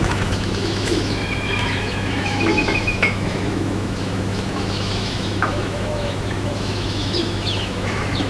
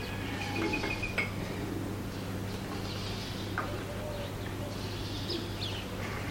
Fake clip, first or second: first